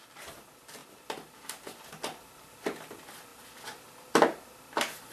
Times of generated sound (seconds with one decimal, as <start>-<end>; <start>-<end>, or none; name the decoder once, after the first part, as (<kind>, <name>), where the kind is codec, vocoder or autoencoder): none